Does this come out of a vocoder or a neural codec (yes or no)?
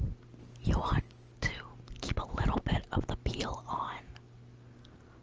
no